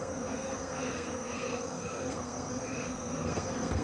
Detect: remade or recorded remade